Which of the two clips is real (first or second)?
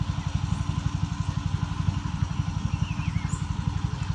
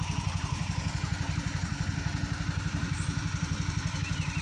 first